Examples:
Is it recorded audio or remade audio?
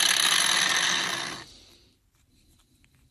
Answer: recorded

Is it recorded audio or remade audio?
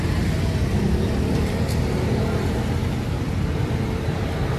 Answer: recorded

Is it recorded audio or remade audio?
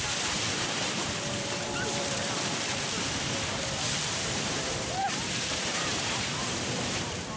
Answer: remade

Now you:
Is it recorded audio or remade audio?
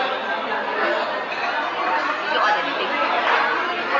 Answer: recorded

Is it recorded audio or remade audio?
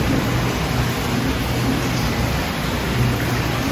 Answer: recorded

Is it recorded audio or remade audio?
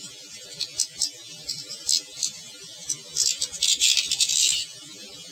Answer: recorded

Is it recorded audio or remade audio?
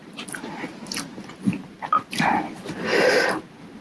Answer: recorded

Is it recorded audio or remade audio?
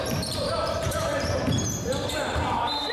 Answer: remade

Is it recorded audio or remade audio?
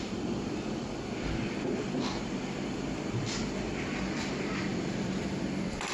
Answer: remade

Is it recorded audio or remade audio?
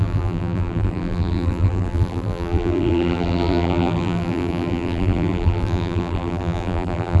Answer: remade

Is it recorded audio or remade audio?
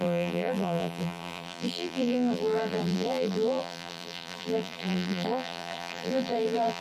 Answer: remade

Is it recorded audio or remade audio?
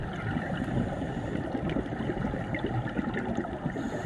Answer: recorded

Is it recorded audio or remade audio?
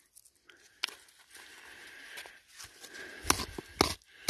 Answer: recorded